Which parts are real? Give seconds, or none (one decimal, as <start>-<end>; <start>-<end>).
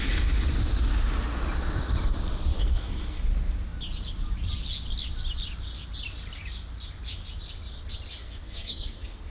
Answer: 0.0-2.5; 3.2-8.2